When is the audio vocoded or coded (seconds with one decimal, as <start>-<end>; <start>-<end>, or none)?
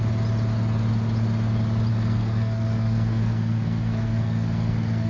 1.9-5.1